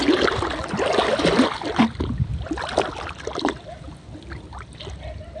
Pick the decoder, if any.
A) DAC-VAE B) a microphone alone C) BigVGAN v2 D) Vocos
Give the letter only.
B